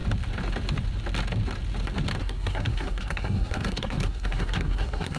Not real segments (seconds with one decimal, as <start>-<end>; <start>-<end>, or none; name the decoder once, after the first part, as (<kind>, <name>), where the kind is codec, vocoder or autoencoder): 2.2-5.2 (codec, SNAC)

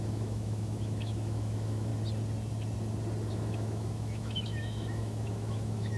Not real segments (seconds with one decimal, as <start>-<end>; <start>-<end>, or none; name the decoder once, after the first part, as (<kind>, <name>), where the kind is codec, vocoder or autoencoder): 0.0-1.9 (autoencoder, DAC-VAE); 3.3-6.0

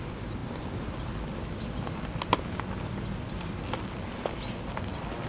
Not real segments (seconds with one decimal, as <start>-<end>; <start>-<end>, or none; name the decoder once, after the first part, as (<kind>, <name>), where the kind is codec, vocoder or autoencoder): none

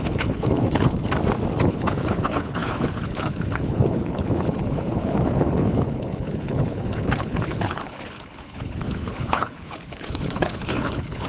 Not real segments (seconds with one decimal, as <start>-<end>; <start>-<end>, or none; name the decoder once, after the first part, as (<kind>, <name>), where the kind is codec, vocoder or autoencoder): 0.0-1.0 (codec, HILCodec); 1.6-11.3

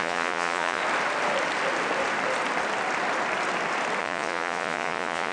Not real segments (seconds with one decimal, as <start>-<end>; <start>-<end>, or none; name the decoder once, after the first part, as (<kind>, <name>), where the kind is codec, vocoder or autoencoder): 0.0-0.8 (vocoder, Vocos); 4.0-5.3

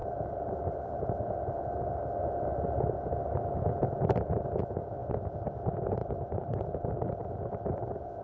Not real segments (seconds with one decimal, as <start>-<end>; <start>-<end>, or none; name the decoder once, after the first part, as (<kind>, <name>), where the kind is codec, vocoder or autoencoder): 0.0-2.0 (vocoder, BigVGAN v2); 6.0-8.2

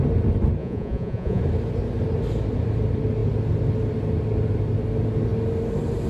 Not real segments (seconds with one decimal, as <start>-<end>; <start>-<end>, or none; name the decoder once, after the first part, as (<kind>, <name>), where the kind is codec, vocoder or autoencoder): 0.6-1.4 (vocoder, Vocos)